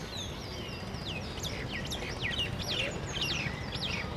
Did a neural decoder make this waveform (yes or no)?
no